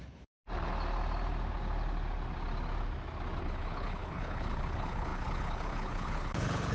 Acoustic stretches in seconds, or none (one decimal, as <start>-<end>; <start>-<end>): 0.4-3.4